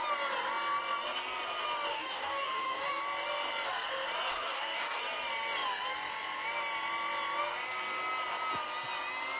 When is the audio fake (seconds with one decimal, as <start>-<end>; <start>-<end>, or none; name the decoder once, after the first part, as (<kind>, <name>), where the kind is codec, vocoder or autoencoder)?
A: 1.9-3.0 (codec, DAC); 4.3-5.0